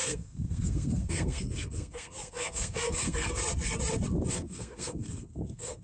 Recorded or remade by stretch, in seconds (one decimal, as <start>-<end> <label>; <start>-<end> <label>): 0.0-3.4 remade; 3.4-4.3 recorded; 4.3-5.8 remade